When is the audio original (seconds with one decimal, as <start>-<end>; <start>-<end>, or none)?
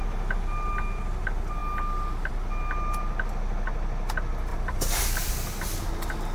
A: 0.0-4.5; 5.3-6.3